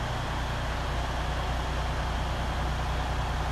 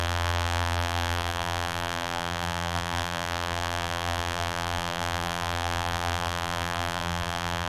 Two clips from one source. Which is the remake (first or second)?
second